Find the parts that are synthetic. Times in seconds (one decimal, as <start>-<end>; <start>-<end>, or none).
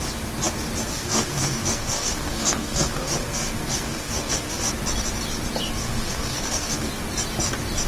0.9-4.7; 5.8-6.9